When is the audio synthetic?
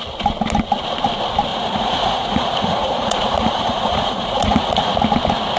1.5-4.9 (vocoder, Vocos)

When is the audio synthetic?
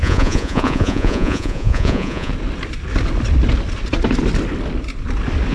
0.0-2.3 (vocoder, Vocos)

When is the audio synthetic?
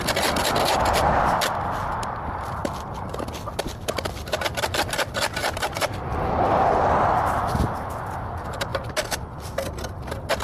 none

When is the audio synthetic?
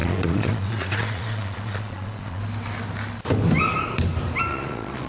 0.0-2.4 (vocoder, Vocos); 4.5-5.1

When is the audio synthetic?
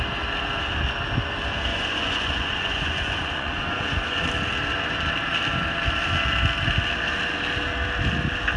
1.7-4.3 (vocoder, Vocos)